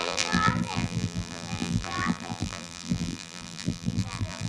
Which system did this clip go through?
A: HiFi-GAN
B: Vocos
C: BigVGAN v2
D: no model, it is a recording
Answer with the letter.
C